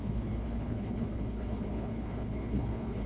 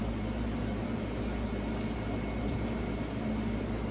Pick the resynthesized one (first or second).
first